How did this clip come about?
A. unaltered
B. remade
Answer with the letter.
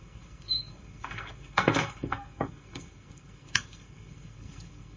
B